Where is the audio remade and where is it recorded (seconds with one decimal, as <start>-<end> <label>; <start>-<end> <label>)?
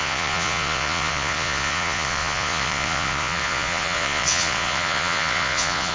0.0-5.9 remade